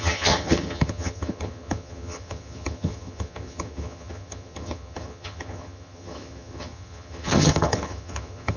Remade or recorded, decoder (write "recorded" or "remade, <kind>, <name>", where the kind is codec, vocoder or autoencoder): remade, vocoder, HiFi-GAN